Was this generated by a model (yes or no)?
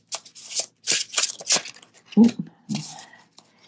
no